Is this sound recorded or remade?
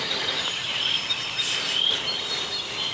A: recorded